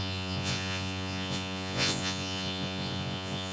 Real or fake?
fake